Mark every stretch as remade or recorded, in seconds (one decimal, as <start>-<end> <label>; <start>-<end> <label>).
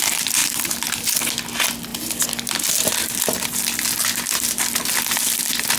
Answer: 0.0-5.8 recorded